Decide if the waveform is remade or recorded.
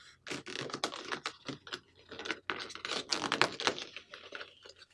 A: recorded